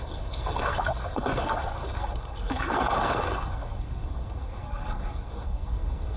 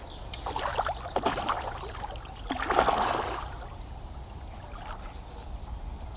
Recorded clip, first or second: second